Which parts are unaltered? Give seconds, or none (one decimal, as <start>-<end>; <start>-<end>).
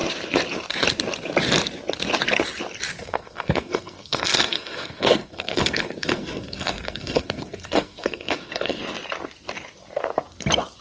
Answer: 0.0-3.0; 8.8-10.8